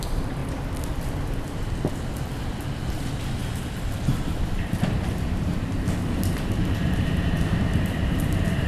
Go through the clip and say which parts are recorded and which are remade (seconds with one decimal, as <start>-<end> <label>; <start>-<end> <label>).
0.0-0.4 remade; 0.4-1.9 recorded; 1.9-8.7 remade